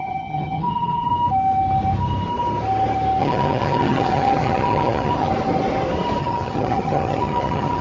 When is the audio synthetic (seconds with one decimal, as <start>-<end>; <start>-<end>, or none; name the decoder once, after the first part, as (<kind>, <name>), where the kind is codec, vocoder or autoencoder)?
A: 0.0-1.1 (vocoder, HiFi-GAN); 3.2-5.3; 6.2-7.8